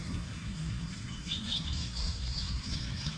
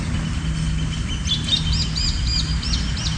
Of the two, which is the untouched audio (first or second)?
second